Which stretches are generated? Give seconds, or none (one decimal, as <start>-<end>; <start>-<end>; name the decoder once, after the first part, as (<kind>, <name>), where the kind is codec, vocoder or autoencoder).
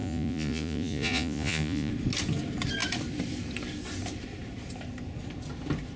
0.0-1.9 (vocoder, Vocos)